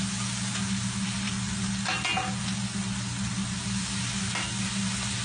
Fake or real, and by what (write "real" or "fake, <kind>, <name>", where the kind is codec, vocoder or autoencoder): real